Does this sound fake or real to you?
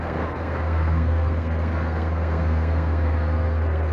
fake